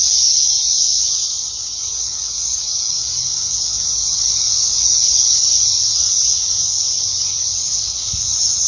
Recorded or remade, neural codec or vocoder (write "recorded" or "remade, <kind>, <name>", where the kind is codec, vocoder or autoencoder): remade, codec, DAC